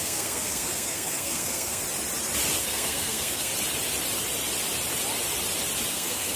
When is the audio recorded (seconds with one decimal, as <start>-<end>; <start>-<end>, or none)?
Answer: 1.8-2.6; 3.5-5.9